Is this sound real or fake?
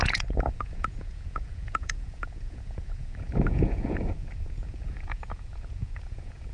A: fake